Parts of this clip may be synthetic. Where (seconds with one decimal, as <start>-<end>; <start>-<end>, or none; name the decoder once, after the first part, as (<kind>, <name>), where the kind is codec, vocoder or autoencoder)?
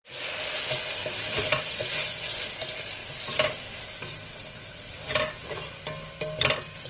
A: 1.7-2.5 (vocoder, Vocos)